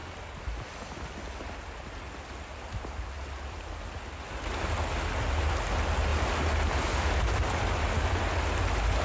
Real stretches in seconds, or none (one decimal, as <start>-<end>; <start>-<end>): 0.0-9.0